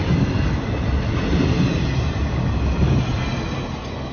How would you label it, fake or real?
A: real